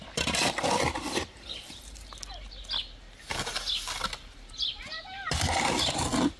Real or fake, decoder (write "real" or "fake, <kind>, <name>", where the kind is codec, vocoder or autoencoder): real